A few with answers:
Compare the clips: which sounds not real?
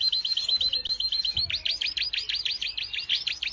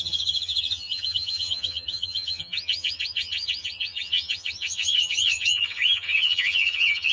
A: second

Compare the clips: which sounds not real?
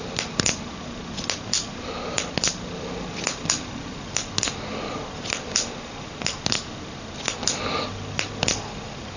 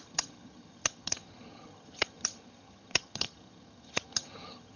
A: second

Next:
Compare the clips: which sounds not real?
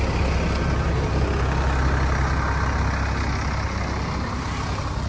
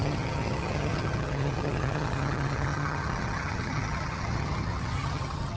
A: second